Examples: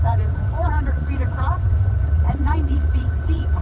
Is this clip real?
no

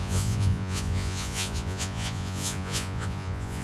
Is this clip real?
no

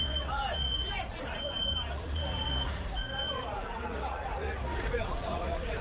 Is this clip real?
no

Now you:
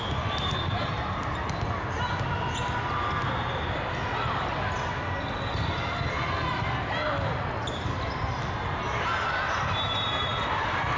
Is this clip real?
yes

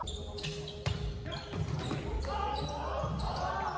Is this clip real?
yes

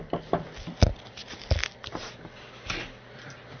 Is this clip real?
yes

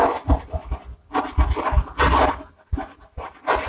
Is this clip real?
yes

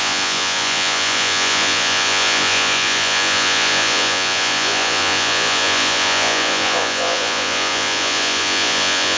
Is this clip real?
no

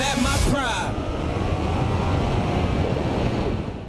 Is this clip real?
no